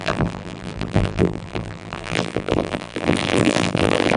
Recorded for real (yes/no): no